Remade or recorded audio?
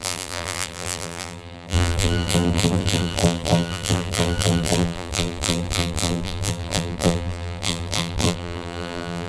remade